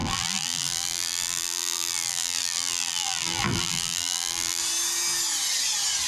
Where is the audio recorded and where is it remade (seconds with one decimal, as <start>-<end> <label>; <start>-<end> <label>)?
0.0-4.6 remade; 4.6-6.1 recorded

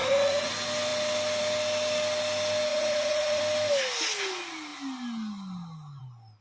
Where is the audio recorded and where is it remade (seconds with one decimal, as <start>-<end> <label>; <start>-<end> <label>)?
0.0-0.5 remade; 0.5-2.7 recorded; 2.7-3.4 remade; 3.4-6.4 recorded

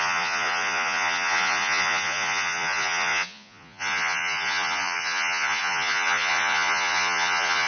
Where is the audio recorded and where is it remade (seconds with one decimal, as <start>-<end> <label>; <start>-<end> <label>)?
0.0-7.7 remade

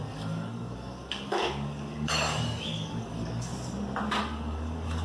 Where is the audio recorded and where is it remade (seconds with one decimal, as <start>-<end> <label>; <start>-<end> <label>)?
0.0-3.5 remade; 3.5-4.2 recorded; 4.2-5.0 remade

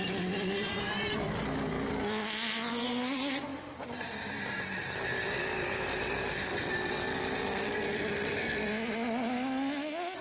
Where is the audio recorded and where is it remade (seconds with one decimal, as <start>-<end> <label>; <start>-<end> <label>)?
0.0-10.2 recorded

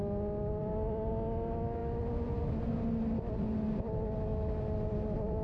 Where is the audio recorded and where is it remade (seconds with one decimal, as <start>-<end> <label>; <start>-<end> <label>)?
0.0-5.4 recorded

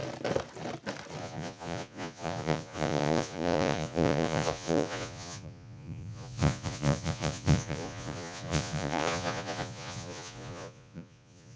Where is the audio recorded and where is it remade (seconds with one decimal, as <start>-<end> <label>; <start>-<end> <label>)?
0.0-1.2 recorded; 1.2-11.6 remade

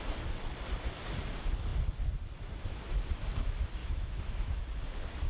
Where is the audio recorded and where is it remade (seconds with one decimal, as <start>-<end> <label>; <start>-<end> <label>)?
0.0-3.8 recorded; 3.8-4.6 remade; 4.6-5.3 recorded